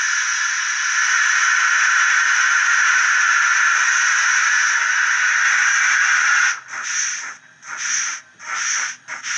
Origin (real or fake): real